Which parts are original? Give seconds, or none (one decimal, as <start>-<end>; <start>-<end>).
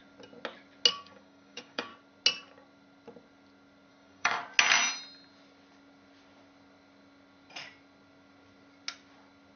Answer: 0.0-0.9; 1.9-3.9; 4.4-9.6